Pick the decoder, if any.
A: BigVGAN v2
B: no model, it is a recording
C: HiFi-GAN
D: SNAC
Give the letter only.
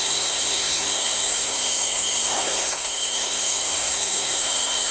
D